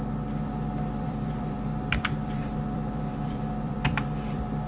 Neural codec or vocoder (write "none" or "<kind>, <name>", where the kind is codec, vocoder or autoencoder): vocoder, BigVGAN v2